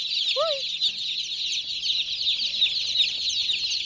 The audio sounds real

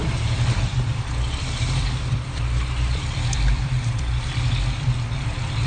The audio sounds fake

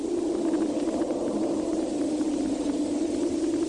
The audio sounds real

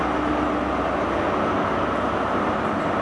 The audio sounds real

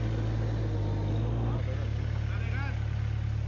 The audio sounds real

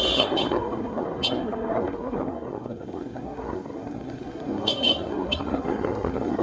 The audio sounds fake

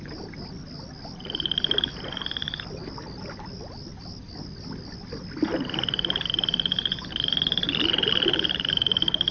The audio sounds real